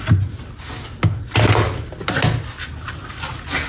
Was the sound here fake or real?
real